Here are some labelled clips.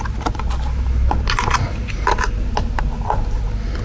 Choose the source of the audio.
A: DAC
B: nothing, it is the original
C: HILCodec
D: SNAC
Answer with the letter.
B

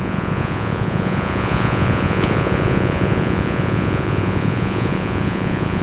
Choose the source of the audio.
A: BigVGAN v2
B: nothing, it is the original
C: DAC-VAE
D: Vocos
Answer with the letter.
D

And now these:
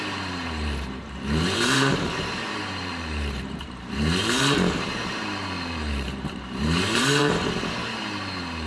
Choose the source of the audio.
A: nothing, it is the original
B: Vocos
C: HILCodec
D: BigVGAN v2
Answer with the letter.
D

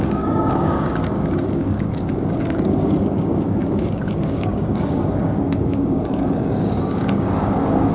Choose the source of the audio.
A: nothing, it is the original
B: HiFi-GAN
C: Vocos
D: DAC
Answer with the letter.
D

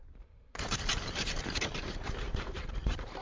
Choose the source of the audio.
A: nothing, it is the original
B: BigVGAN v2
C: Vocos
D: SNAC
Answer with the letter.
B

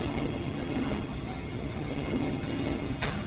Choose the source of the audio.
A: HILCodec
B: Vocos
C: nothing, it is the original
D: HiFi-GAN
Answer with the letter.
D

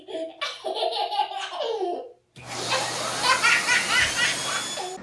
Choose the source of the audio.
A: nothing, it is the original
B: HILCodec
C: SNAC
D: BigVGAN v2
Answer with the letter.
A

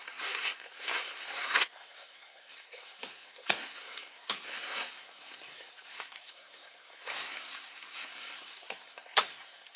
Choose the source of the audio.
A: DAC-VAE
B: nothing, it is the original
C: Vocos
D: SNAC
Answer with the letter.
D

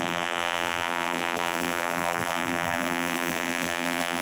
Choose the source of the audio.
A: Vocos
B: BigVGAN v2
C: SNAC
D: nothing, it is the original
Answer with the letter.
B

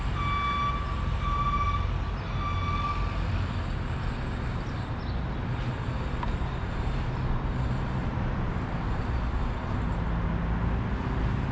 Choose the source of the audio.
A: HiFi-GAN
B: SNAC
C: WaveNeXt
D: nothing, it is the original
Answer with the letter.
D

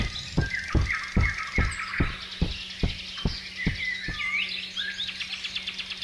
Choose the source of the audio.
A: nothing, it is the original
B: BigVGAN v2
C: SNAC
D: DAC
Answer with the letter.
A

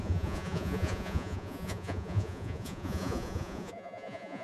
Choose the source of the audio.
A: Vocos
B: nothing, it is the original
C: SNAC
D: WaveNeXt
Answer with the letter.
A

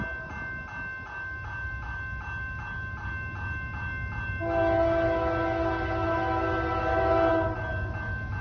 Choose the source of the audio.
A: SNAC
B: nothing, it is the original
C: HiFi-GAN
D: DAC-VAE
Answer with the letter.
B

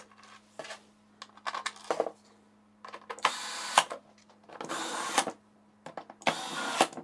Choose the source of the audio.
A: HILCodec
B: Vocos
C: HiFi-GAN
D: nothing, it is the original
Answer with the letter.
D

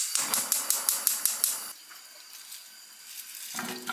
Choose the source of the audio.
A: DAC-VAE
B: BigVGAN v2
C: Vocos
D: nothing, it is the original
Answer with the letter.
D